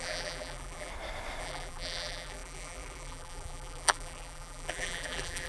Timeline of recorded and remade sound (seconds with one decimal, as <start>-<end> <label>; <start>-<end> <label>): 0.0-0.9 remade; 0.9-1.4 recorded; 1.4-5.5 remade